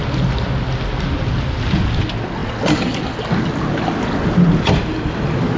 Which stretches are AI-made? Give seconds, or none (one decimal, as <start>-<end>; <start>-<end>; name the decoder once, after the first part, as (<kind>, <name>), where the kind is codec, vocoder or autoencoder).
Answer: none